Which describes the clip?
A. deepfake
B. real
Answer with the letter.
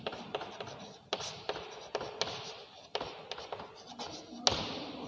B